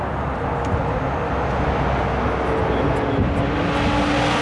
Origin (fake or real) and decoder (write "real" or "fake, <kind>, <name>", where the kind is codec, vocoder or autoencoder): real